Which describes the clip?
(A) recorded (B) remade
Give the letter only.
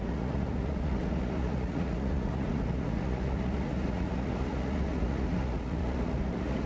B